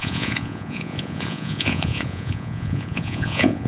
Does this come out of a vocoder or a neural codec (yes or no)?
yes